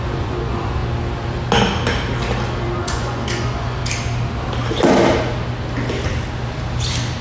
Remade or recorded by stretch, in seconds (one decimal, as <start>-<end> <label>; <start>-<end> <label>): 0.0-0.8 remade; 0.8-2.8 recorded; 2.8-3.8 remade; 3.8-7.2 recorded